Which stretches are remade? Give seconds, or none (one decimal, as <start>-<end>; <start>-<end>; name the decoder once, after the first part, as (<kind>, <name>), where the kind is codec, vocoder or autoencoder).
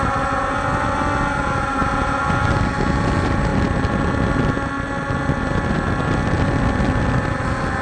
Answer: none